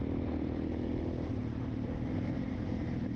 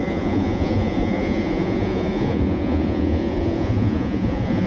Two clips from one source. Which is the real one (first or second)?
first